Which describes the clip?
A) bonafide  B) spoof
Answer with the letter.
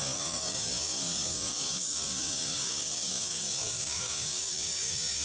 B